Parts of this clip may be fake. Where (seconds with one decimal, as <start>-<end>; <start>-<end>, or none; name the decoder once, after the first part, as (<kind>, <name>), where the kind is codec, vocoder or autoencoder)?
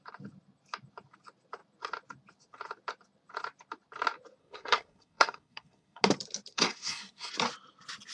4.4-6.0 (codec, SNAC); 6.5-7.3